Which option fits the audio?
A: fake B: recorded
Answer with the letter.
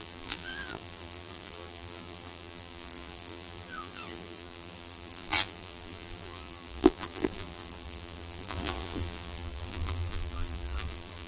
A